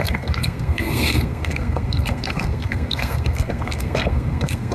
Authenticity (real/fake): fake